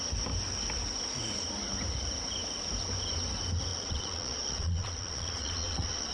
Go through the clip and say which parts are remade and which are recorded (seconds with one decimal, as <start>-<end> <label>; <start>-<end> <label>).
0.0-3.7 recorded; 3.7-6.1 remade